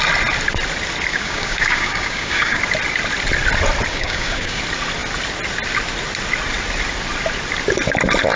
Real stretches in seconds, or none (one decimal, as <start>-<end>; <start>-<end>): 0.0-1.1; 2.6-3.9; 4.6-8.4